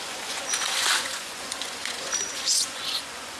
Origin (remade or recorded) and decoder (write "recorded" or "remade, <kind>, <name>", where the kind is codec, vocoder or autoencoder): remade, vocoder, Vocos